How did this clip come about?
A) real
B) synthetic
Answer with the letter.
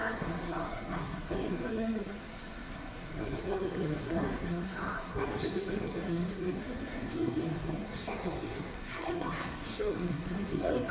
B